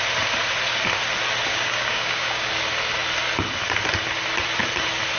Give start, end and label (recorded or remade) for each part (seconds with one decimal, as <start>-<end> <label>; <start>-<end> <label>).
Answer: 0.0-1.5 recorded; 1.5-2.5 remade; 2.5-5.2 recorded